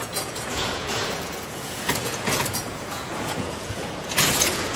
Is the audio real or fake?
fake